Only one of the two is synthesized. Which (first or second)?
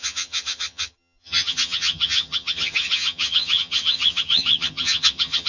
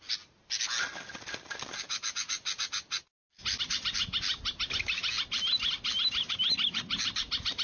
first